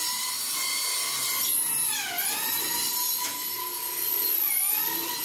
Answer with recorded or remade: recorded